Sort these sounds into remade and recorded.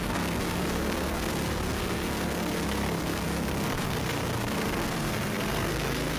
remade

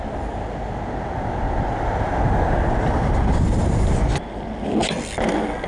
recorded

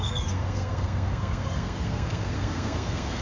remade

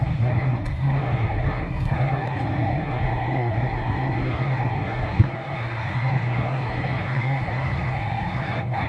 remade